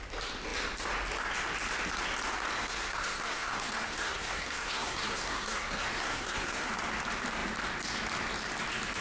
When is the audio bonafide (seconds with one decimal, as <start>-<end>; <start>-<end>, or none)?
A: 0.0-2.6; 6.7-9.0

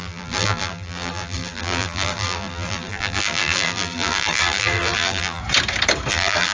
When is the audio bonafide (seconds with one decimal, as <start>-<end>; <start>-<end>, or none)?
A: 5.4-6.1